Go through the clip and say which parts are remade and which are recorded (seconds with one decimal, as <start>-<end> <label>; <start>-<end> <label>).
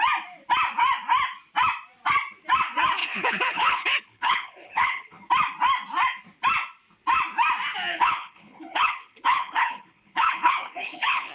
0.0-3.0 recorded; 3.0-5.2 remade; 5.2-7.9 recorded; 7.9-11.3 remade